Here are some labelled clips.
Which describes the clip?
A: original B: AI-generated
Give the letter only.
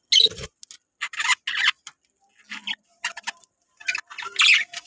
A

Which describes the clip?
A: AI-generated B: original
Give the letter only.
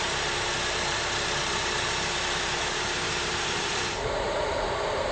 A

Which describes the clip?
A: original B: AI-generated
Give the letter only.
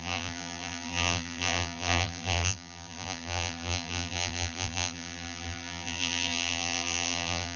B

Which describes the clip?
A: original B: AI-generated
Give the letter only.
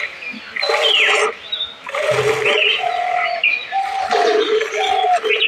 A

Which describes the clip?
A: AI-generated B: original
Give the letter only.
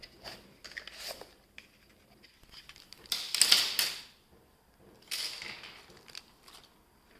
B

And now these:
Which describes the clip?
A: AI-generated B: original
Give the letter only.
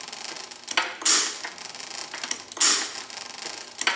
B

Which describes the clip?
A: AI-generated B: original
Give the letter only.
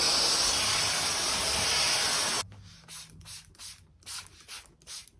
B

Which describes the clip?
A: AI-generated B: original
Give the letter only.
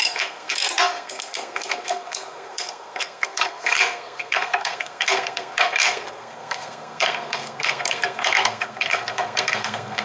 A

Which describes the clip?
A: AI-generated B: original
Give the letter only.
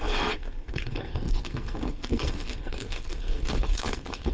A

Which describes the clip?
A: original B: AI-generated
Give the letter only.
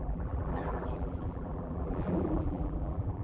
B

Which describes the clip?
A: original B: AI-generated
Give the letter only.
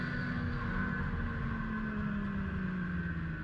A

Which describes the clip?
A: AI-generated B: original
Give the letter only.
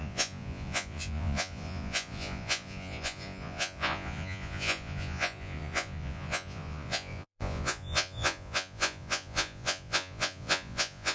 A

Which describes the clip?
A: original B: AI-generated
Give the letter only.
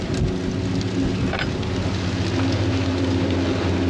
A